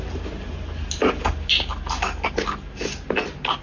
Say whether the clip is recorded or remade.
recorded